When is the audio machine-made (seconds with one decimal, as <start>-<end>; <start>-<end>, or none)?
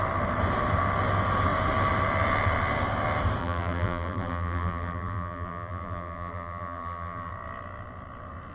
3.4-7.3